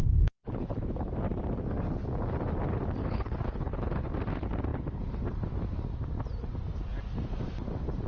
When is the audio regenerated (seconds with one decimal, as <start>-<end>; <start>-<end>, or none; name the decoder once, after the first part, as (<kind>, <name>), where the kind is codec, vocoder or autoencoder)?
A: 0.0-1.1 (codec, HILCodec); 3.0-4.1